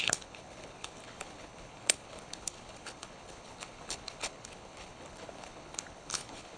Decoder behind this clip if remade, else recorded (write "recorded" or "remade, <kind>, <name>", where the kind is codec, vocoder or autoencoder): remade, codec, HILCodec